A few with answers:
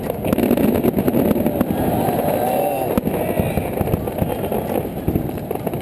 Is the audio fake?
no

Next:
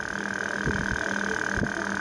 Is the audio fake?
yes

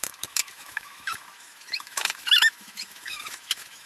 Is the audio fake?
yes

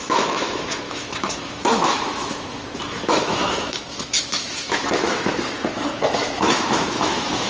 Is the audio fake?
yes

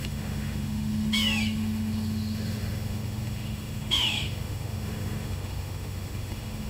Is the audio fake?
yes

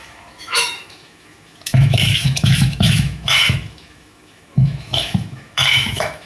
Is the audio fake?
yes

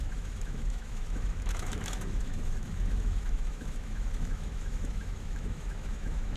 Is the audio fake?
yes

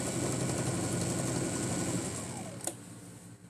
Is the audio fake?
no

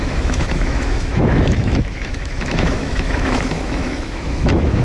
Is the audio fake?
yes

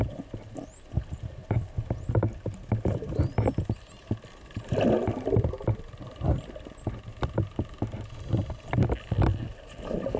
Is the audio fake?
no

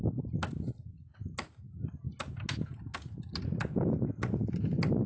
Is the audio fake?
no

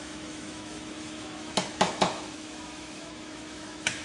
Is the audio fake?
yes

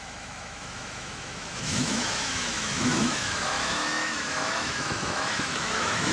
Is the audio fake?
yes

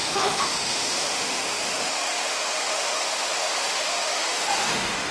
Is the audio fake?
yes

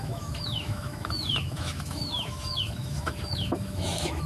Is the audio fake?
yes